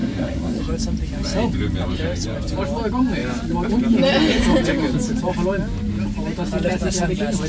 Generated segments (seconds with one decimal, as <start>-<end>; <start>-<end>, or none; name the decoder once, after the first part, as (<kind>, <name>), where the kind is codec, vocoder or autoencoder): 0.0-0.6 (codec, SNAC)